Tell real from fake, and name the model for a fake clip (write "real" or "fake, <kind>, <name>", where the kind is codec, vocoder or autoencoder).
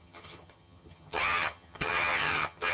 fake, vocoder, HiFi-GAN